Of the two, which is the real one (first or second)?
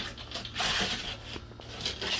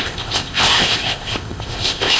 first